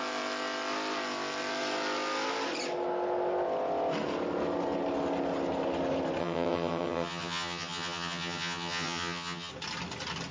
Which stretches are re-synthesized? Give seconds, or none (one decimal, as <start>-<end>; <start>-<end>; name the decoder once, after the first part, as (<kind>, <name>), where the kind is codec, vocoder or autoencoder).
6.2-9.5 (vocoder, HiFi-GAN)